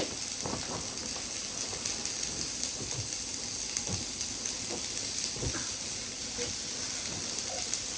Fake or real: real